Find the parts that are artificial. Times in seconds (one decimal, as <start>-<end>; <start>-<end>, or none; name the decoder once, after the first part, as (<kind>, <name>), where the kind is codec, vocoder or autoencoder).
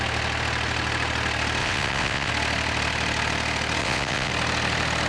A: 1.6-2.3 (vocoder, WaveNeXt); 3.8-4.3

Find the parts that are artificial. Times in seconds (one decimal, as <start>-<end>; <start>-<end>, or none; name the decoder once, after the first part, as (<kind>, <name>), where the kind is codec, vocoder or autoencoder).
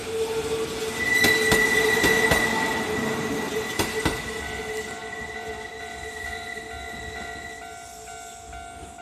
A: 5.0-6.6 (vocoder, BigVGAN v2)